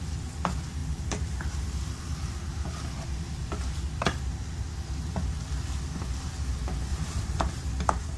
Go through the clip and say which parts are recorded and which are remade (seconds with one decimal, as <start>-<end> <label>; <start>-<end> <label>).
0.0-6.9 recorded; 6.9-7.4 remade; 7.4-8.2 recorded